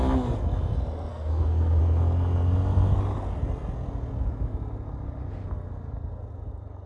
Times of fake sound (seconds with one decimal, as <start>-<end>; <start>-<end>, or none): 1.1-1.8